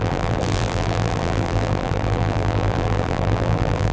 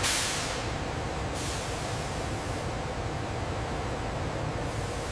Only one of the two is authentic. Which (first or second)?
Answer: second